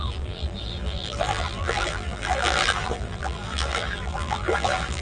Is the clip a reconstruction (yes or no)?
yes